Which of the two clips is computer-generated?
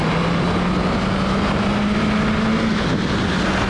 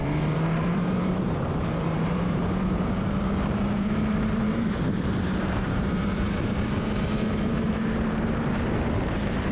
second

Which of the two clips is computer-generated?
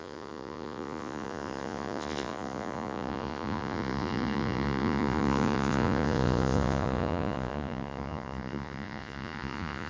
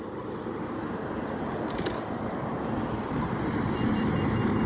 first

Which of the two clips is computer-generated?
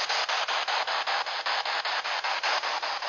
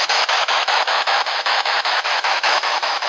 second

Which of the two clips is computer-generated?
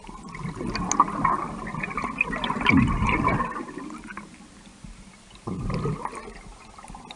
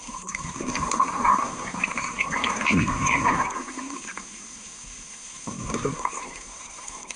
second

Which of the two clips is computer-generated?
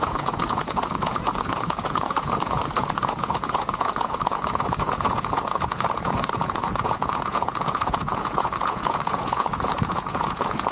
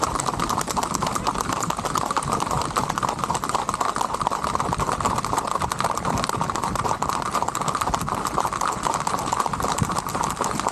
first